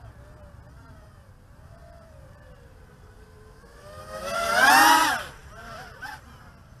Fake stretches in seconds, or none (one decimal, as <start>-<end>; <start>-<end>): 0.6-4.7; 5.4-6.2